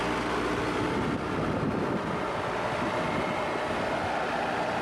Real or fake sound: real